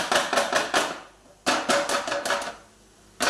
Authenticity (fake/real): real